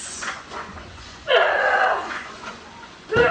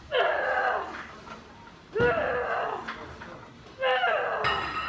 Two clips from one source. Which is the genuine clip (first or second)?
second